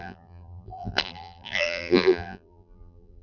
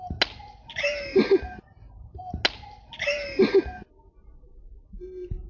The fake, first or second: first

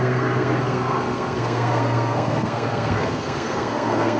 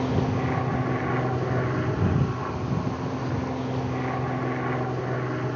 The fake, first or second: first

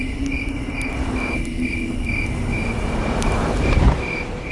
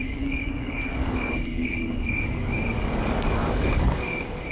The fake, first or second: second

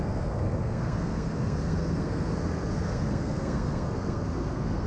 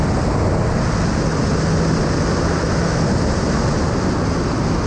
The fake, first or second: first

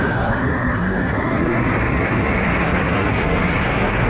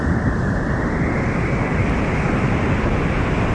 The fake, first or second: first